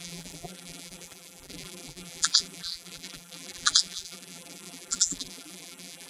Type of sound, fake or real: fake